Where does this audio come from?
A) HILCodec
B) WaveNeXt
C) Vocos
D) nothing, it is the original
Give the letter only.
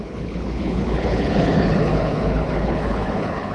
A